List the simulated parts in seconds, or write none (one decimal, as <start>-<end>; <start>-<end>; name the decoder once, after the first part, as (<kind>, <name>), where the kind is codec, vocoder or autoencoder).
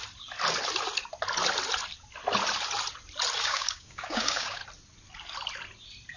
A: 3.4-4.6 (codec, DAC)